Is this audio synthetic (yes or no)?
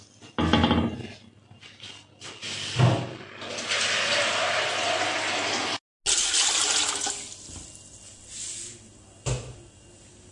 no